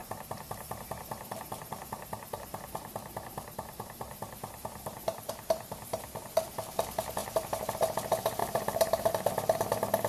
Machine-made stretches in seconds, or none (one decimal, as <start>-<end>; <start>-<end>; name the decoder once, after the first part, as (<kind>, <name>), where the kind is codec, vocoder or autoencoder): 0.0-5.3 (vocoder, BigVGAN v2); 7.2-7.7; 8.4-9.1